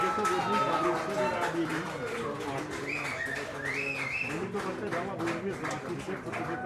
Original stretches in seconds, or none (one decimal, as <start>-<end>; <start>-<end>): 0.0-6.7